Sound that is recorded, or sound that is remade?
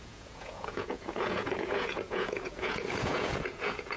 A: remade